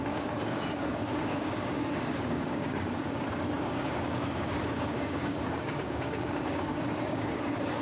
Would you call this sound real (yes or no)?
no